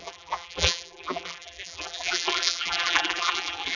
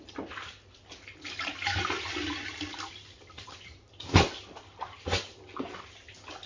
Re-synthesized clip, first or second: first